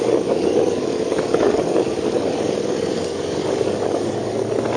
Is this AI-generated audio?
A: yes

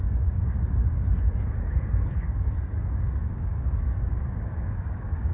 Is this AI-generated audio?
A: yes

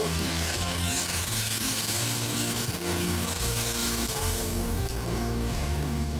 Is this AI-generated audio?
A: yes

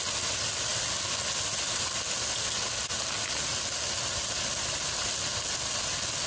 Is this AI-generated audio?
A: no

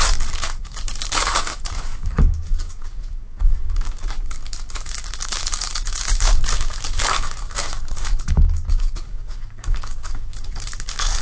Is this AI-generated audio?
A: yes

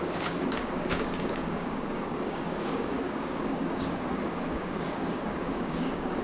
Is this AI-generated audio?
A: yes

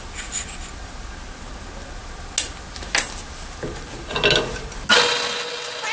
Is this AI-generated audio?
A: no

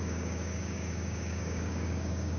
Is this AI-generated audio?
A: yes